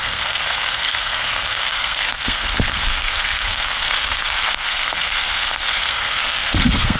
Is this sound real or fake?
fake